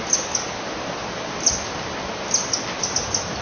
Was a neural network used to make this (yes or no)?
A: no